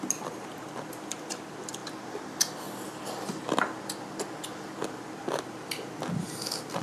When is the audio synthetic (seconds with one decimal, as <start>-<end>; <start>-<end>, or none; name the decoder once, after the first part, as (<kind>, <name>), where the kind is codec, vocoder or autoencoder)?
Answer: none